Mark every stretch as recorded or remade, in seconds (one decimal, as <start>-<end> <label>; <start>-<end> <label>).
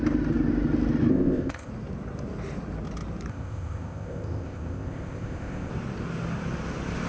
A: 0.0-1.1 recorded; 1.1-1.7 remade; 1.7-3.3 recorded; 3.3-5.7 remade; 5.7-7.1 recorded